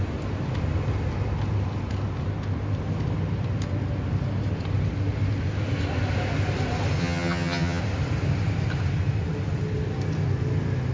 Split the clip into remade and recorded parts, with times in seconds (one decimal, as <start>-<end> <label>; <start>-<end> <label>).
0.0-7.0 recorded; 7.0-7.8 remade; 7.8-10.9 recorded